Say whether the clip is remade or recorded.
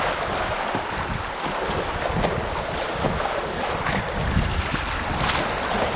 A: recorded